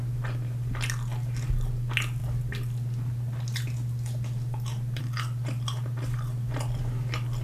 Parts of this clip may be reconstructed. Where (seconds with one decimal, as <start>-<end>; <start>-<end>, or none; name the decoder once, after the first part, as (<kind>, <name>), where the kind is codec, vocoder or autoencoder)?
none